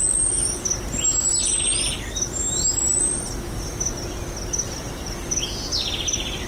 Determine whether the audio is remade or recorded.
recorded